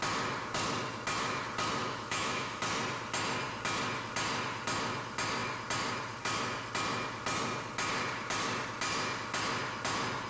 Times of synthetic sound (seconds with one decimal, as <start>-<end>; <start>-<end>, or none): 1.8-2.6